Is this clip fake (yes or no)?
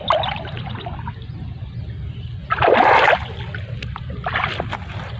no